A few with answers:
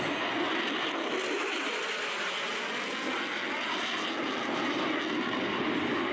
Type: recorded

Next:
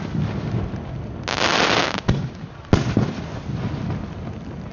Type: recorded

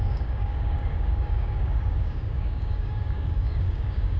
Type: remade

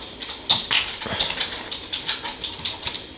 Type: recorded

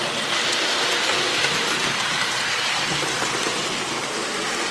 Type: remade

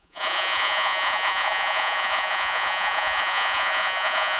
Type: remade